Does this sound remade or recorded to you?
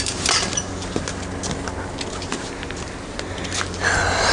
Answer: recorded